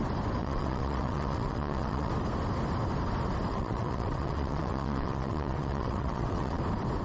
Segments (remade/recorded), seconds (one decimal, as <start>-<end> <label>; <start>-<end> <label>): 0.0-0.4 recorded; 0.4-2.1 remade; 2.1-3.5 recorded; 3.5-6.6 remade; 6.6-7.0 recorded